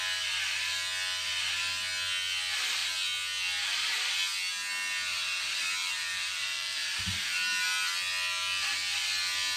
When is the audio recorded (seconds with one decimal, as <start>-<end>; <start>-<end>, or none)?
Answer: 0.0-5.8; 7.0-9.6